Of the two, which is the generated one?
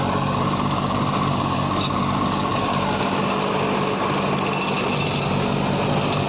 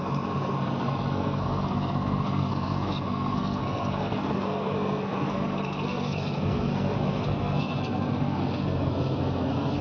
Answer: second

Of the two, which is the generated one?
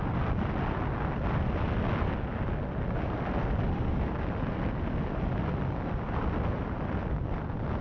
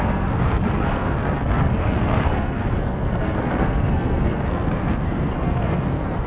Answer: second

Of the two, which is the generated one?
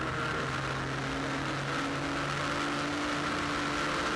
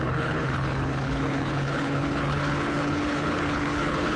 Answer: second